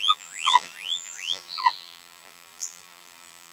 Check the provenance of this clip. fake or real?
fake